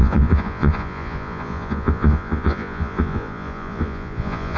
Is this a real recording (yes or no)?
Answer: no